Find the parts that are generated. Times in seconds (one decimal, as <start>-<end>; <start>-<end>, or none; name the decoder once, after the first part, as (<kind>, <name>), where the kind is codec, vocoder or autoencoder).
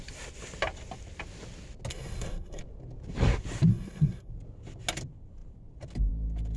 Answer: 1.9-2.6 (codec, SNAC); 3.7-4.3